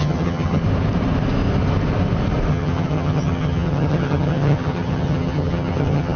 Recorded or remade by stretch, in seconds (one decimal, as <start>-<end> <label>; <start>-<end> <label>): 0.0-0.6 remade; 0.6-2.5 recorded; 2.5-6.2 remade